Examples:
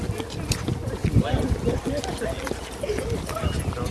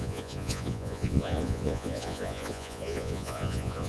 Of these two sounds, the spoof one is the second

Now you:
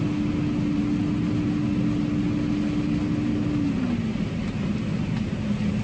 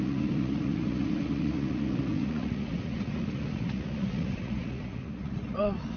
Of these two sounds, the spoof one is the second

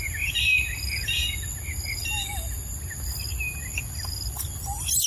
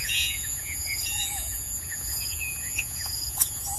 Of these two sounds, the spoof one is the second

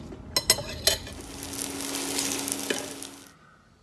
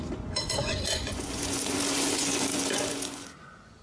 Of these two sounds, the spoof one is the second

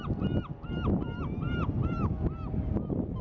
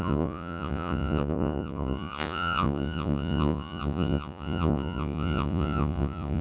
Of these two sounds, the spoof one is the second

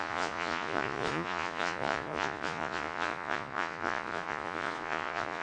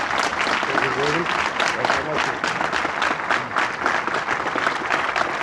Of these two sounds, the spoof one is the first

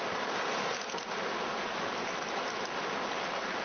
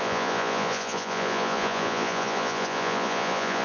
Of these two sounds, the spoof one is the second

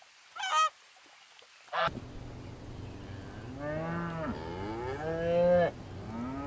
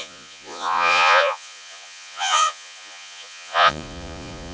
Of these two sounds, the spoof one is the second